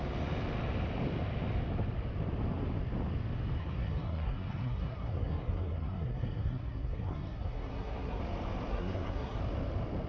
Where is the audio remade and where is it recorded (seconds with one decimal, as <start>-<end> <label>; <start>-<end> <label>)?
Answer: 0.0-3.6 recorded; 3.6-8.2 remade; 8.2-8.7 recorded; 8.7-9.4 remade; 9.4-10.1 recorded